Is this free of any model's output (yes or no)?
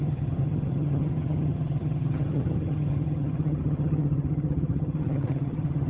no